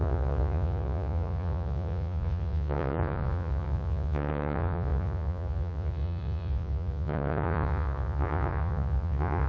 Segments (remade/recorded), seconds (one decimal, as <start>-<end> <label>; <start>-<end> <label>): 0.0-9.5 remade